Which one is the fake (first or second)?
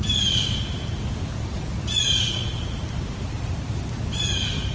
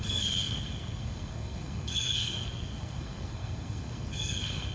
second